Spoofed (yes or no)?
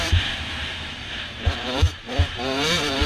yes